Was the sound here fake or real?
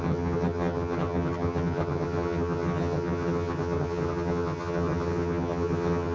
fake